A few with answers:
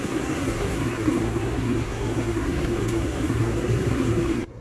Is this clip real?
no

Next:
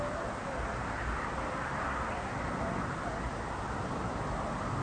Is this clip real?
yes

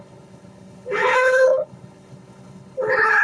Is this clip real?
no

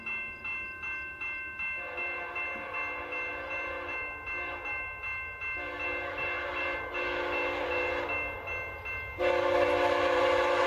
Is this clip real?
yes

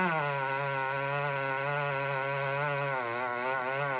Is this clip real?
yes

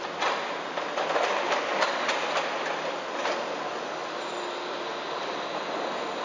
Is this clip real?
yes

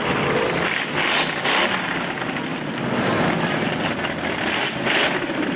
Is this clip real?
yes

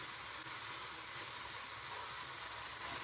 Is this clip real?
yes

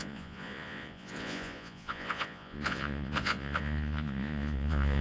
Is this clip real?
no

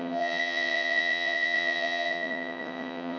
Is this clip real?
no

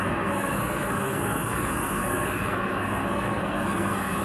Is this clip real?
no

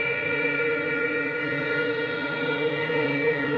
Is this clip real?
no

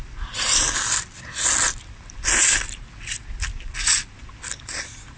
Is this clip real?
yes